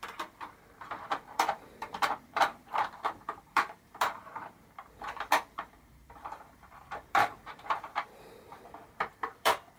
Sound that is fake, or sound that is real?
fake